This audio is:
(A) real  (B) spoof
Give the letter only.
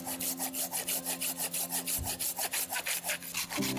A